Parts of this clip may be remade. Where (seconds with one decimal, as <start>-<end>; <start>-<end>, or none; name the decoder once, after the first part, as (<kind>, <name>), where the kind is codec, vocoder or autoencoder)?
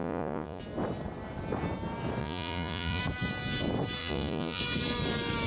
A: 0.0-0.6 (vocoder, Vocos); 2.2-3.0; 4.0-4.6